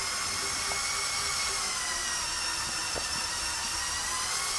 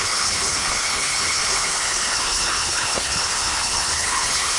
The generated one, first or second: second